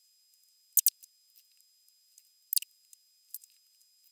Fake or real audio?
real